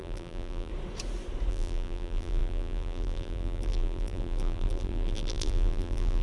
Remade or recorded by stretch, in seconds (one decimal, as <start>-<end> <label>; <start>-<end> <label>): 0.0-0.7 remade; 0.7-1.5 recorded; 1.5-6.2 remade